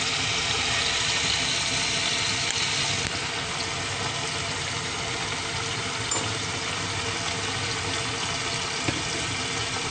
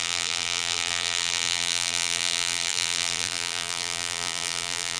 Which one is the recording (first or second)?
first